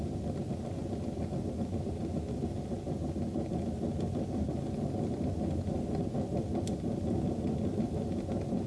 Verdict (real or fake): real